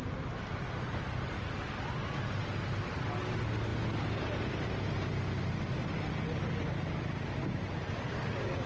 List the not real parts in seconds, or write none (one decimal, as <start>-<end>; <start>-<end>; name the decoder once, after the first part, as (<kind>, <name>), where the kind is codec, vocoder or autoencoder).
3.7-4.7 (vocoder, BigVGAN v2)